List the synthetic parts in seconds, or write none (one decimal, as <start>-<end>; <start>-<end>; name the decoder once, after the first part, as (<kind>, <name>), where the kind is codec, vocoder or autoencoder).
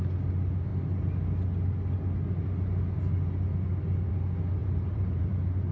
4.6-5.3 (vocoder, BigVGAN v2)